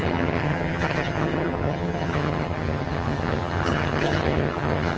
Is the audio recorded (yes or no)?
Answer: no